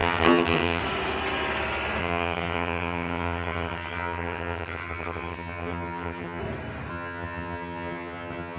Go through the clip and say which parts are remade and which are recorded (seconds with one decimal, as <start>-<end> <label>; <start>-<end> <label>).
0.0-0.8 remade; 0.8-2.0 recorded; 2.0-6.4 remade; 6.4-6.9 recorded; 6.9-8.6 remade